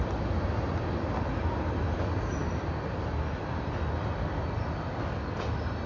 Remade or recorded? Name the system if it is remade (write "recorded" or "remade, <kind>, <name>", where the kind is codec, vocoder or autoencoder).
recorded